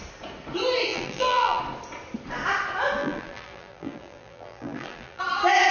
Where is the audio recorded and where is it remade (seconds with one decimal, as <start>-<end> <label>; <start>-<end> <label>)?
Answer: 0.0-0.9 recorded; 0.9-1.6 remade; 1.6-3.0 recorded; 3.0-5.2 remade; 5.2-5.7 recorded